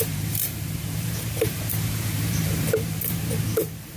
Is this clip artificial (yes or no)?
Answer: yes